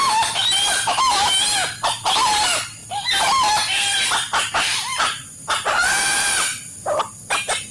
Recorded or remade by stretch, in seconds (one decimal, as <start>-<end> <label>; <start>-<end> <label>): 0.0-2.8 remade; 2.8-4.5 recorded; 4.5-7.7 remade